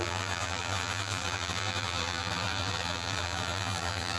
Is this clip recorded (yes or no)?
no